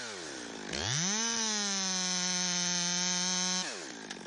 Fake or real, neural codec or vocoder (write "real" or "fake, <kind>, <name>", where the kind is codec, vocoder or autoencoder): real